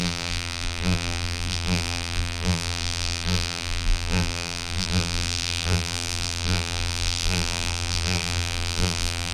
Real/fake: fake